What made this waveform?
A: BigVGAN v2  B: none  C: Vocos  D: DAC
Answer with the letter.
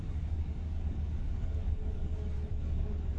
D